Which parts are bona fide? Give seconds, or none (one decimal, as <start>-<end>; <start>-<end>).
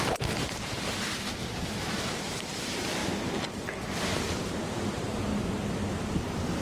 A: 3.0-3.7; 5.3-6.6